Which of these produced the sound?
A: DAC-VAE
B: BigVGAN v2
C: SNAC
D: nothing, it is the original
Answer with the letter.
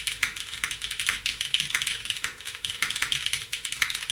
A